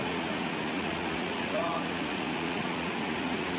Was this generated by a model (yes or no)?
yes